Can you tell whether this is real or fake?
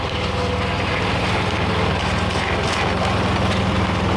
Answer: real